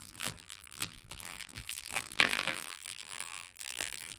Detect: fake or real fake